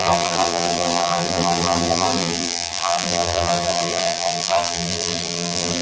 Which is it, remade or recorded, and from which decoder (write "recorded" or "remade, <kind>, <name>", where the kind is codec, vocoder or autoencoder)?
remade, vocoder, BigVGAN v2